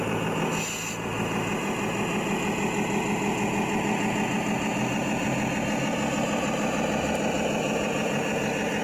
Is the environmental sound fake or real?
real